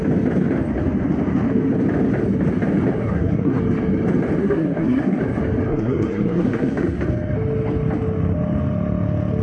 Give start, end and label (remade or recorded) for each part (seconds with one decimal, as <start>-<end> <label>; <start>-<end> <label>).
0.0-3.0 recorded; 3.0-3.6 remade; 3.6-4.4 recorded; 4.4-5.2 remade; 5.2-5.7 recorded; 5.7-7.0 remade; 7.0-9.4 recorded